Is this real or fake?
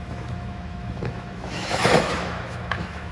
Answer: fake